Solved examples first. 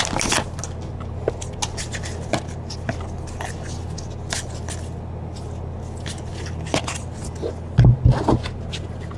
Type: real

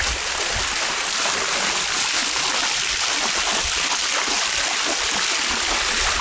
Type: real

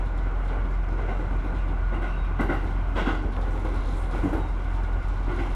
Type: real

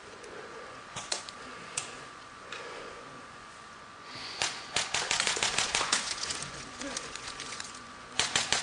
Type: fake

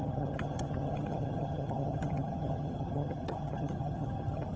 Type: fake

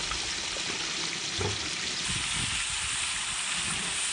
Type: real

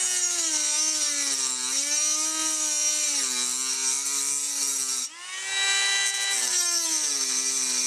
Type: real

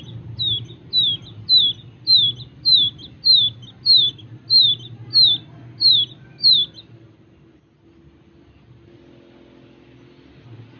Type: real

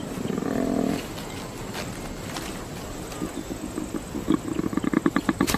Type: real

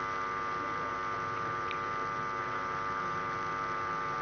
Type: real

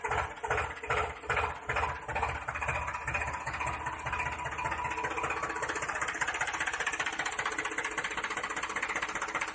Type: real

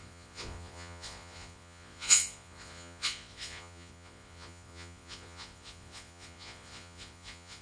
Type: fake